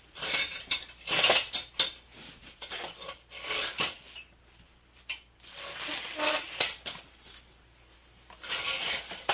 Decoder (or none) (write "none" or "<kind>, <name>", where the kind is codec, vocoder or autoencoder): none